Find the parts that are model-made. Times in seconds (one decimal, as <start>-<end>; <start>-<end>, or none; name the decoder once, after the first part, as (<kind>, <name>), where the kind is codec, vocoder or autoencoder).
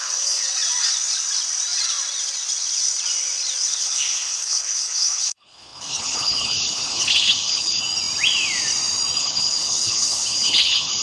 0.0-0.4 (codec, HILCodec); 3.7-7.8; 9.2-11.0